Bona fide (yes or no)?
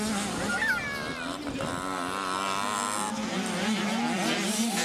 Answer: yes